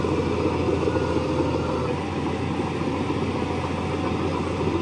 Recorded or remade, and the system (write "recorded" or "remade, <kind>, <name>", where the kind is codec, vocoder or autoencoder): recorded